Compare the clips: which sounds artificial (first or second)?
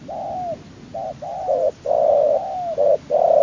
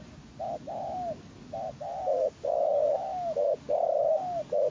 second